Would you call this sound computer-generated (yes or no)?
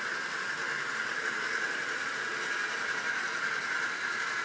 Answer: no